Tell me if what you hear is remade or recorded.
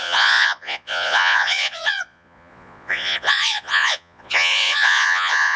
remade